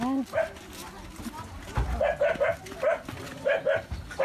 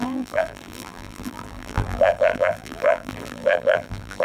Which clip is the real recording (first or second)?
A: first